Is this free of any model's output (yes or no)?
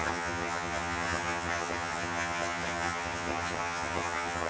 no